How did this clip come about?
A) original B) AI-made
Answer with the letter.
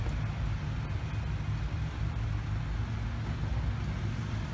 A